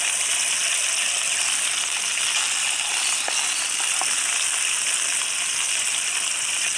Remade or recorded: recorded